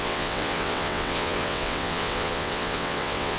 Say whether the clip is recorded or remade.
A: remade